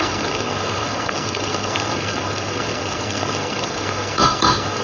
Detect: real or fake fake